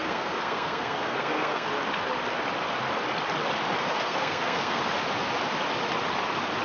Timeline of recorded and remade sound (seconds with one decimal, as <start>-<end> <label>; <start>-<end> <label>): 0.0-1.7 remade; 1.7-3.8 recorded; 3.8-4.8 remade; 4.8-6.6 recorded